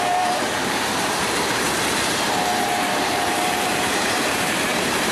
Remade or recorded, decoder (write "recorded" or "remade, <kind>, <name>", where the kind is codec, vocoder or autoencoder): remade, vocoder, BigVGAN v2